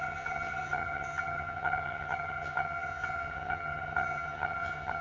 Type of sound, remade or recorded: remade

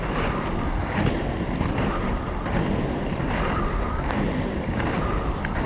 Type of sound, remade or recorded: recorded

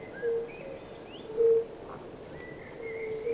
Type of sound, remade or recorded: recorded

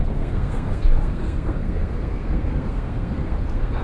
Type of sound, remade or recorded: remade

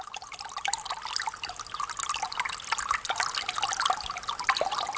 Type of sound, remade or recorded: recorded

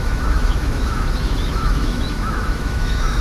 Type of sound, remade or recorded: remade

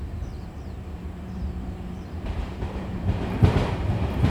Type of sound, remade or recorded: remade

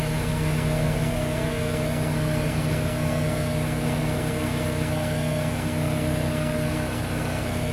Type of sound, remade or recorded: remade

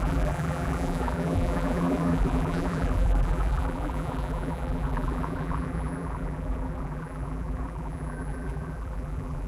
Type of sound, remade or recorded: remade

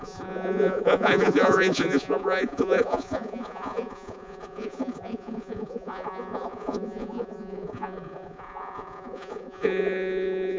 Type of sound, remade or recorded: remade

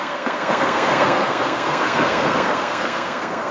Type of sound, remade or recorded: remade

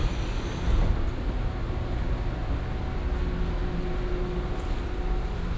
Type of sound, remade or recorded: recorded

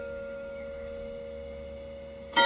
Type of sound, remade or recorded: remade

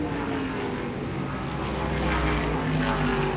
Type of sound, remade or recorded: recorded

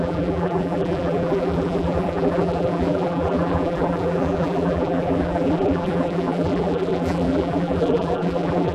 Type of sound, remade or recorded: remade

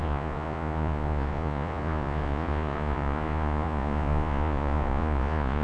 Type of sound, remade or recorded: remade